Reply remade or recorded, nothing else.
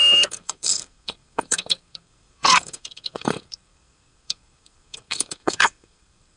remade